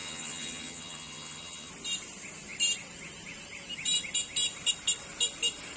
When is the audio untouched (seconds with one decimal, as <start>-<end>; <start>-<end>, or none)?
1.7-5.8

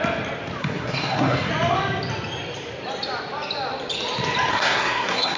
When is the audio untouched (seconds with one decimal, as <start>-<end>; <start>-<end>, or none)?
0.0-0.6; 1.5-4.5